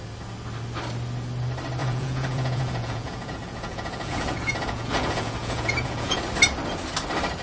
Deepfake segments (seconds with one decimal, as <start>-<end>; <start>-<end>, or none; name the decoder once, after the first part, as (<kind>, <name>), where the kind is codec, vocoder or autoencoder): 1.8-6.2 (vocoder, Vocos)